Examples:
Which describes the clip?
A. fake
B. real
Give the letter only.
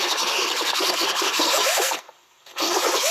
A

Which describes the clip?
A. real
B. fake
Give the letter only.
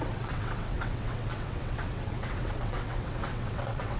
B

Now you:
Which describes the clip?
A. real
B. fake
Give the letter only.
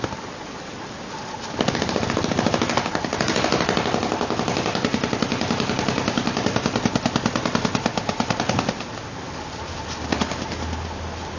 A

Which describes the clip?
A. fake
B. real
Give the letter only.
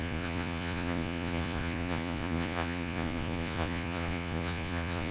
A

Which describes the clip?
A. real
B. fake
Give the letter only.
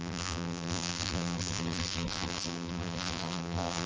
B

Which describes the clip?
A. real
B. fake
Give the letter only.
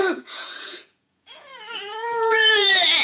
B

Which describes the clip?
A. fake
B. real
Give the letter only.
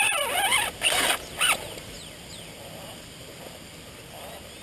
B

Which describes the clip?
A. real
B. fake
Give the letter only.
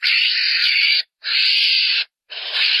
B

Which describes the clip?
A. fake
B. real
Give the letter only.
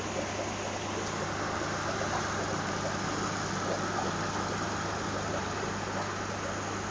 B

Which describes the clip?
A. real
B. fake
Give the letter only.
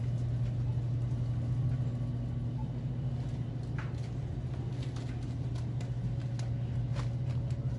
A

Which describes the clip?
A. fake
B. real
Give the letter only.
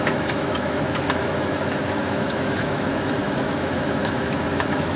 A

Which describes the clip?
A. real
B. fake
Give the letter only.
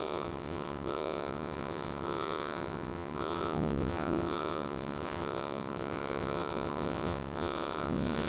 B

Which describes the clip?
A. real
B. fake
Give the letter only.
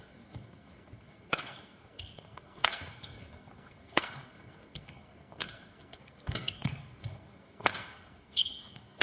B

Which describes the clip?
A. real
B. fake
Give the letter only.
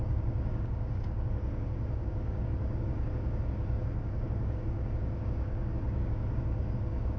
B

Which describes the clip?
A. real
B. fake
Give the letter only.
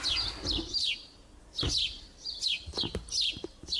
B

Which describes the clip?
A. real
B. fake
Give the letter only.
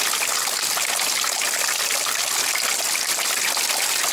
A